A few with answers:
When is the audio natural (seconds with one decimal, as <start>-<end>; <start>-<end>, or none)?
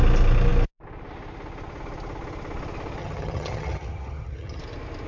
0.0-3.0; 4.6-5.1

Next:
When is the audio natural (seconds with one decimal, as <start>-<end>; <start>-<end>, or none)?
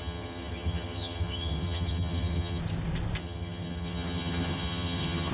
2.6-3.2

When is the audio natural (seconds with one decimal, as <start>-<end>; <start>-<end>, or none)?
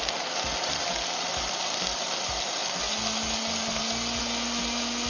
0.0-5.1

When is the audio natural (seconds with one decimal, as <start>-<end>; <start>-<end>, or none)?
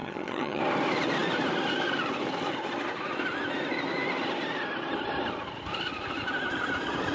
0.6-7.1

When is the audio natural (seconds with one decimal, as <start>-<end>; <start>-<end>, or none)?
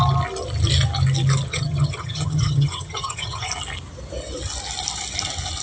0.0-1.5; 3.5-5.6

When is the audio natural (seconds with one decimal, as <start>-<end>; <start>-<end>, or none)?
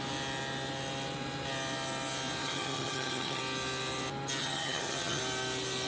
0.0-2.4; 3.4-4.4; 5.2-5.9